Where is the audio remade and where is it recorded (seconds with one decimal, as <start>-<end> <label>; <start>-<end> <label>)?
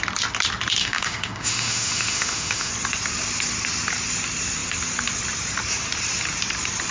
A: 0.0-0.8 recorded; 0.8-2.7 remade; 2.7-6.9 recorded